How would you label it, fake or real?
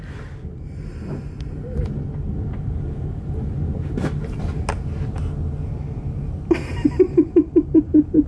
real